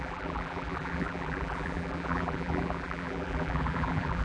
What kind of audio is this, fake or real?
fake